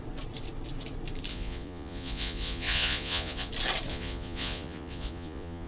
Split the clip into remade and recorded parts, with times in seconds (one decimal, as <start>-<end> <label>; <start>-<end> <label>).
0.0-1.3 recorded; 1.3-3.5 remade; 3.5-3.9 recorded; 3.9-5.7 remade